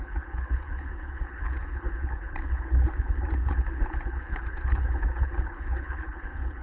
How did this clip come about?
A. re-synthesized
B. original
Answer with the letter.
A